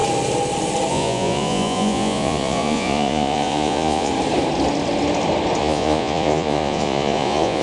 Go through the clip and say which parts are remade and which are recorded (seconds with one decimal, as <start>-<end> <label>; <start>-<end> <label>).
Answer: 0.0-0.9 recorded; 0.9-4.1 remade; 4.1-5.6 recorded; 5.6-7.6 remade